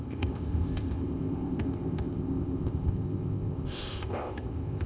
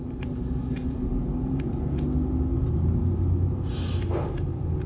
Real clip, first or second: second